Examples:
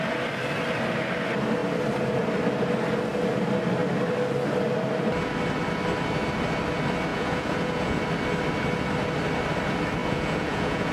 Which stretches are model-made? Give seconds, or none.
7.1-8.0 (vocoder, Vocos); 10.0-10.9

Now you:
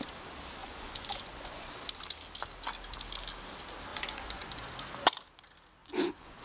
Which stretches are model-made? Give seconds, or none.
0.6-1.7 (vocoder, Vocos); 3.9-4.7; 5.8-6.4

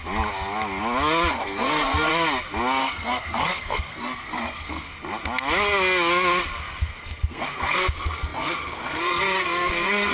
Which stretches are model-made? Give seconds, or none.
1.3-2.1 (codec, SNAC); 2.8-4.9; 6.8-10.1

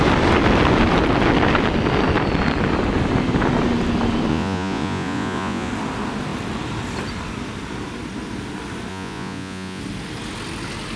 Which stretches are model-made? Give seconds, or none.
4.3-5.7 (vocoder, Vocos); 8.9-9.8

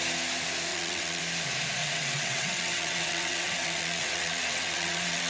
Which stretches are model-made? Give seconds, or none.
0.7-1.2 (vocoder, WaveNeXt); 1.8-5.3